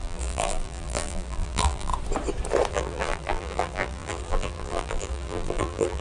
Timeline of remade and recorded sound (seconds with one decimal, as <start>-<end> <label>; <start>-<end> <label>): 0.0-1.9 remade; 1.9-2.7 recorded; 2.7-6.0 remade